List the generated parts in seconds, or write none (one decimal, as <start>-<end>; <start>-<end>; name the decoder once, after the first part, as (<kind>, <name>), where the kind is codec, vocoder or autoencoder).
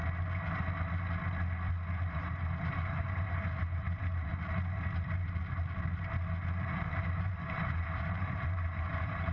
2.1-4.3 (vocoder, BigVGAN v2); 6.7-9.3